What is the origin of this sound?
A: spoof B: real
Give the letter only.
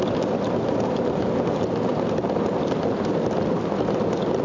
B